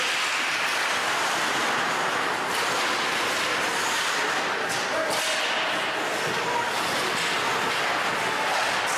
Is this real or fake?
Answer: real